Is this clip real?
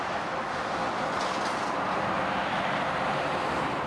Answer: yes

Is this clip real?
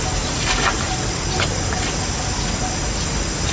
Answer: yes